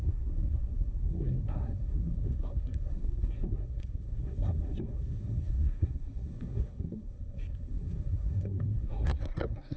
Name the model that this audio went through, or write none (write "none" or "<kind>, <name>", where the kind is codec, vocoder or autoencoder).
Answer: codec, SNAC